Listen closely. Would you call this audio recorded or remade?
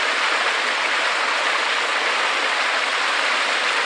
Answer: recorded